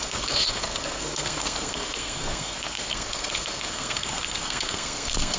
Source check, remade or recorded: remade